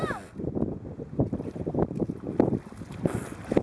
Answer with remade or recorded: recorded